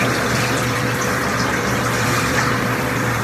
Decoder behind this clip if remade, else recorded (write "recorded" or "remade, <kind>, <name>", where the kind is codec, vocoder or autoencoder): remade, vocoder, BigVGAN v2